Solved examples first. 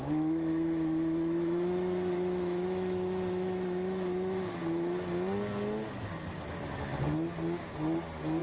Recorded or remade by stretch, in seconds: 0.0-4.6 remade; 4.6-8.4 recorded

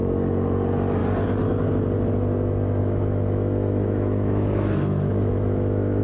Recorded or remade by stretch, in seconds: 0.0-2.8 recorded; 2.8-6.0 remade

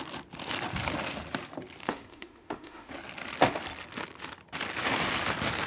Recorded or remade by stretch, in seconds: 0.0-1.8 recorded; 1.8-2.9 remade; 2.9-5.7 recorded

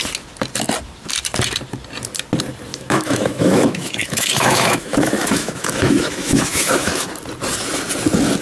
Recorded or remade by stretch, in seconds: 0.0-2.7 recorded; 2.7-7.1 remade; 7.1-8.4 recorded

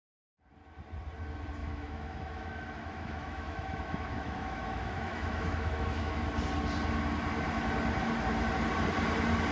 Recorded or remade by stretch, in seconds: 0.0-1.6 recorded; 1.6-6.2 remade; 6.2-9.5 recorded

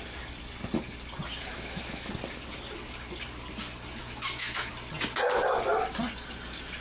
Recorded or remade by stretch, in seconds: 0.0-1.5 recorded; 1.5-2.1 remade; 2.1-4.0 recorded; 4.0-4.7 remade; 4.7-6.8 recorded